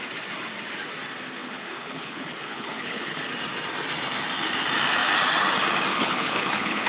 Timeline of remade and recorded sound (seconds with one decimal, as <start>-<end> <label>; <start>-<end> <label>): 0.0-1.4 recorded; 1.4-3.2 remade; 3.2-5.9 recorded; 5.9-6.9 remade